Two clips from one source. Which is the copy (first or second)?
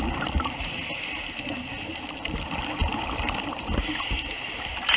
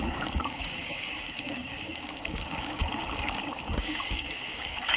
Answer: second